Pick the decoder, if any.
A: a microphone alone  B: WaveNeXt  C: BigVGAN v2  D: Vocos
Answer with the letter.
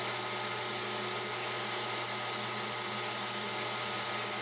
A